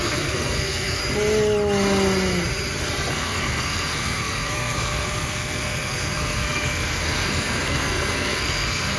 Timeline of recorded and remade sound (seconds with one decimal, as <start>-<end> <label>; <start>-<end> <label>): 0.0-1.0 remade; 1.0-3.1 recorded; 3.1-9.0 remade

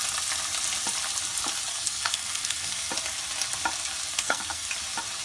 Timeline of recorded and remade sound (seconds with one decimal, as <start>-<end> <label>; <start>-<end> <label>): 0.0-1.7 recorded; 1.7-2.9 remade; 2.9-4.1 recorded; 4.1-4.7 remade; 4.7-5.2 recorded

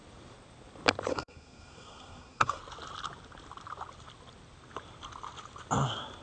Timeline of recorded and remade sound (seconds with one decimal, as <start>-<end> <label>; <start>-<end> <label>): 0.0-1.1 recorded; 1.1-2.6 remade; 2.6-6.2 recorded